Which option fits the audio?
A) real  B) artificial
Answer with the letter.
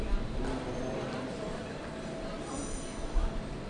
A